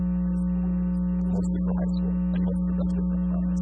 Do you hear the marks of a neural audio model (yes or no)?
no